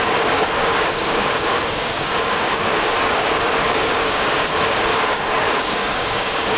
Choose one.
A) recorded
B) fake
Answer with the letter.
B